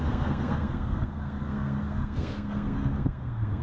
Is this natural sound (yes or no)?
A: no